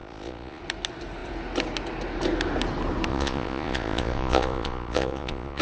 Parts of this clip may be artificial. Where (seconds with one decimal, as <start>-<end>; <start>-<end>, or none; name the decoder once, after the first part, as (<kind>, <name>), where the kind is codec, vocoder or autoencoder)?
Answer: 0.0-0.6 (vocoder, Vocos); 3.1-5.6